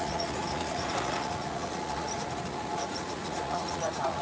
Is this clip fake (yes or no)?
yes